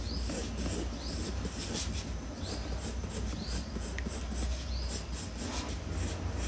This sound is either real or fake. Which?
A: real